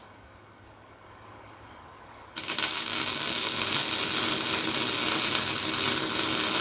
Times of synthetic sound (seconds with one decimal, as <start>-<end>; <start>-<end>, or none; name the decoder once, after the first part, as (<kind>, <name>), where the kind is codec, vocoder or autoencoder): 0.0-3.8 (codec, DAC)